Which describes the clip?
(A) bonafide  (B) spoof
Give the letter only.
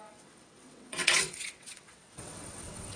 B